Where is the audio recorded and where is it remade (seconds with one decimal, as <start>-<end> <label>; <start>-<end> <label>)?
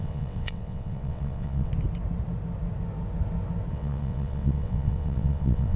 0.0-1.7 remade; 1.7-3.7 recorded; 3.7-5.8 remade